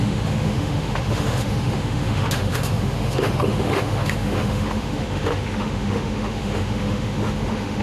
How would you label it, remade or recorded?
remade